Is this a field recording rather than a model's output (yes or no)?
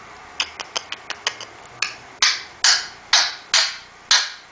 yes